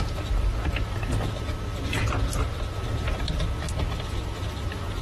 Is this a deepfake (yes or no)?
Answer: no